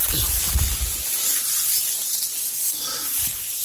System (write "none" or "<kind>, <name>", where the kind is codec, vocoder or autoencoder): none